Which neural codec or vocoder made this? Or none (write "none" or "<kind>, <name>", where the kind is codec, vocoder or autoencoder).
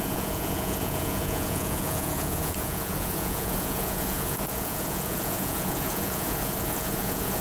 vocoder, Vocos